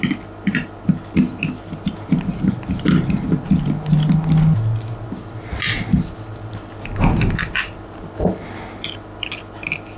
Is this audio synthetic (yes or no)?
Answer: no